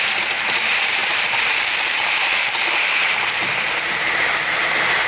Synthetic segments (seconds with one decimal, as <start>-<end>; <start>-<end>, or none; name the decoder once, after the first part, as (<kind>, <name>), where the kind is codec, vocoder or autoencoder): 1.0-4.1 (vocoder, BigVGAN v2)